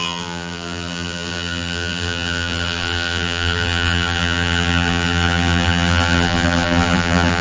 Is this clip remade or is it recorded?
remade